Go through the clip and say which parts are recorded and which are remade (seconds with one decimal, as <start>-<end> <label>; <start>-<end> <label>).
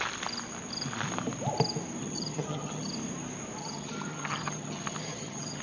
0.0-2.0 recorded; 2.0-2.9 remade; 2.9-3.6 recorded; 3.6-5.6 remade